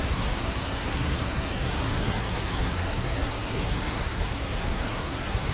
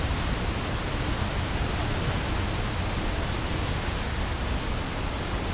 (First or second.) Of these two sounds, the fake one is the first